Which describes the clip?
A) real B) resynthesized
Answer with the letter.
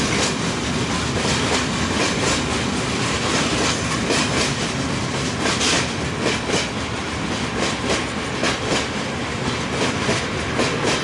A